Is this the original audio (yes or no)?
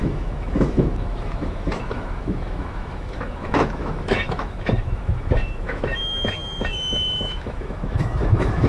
no